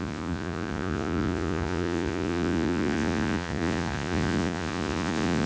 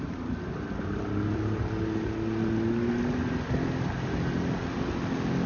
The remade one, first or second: first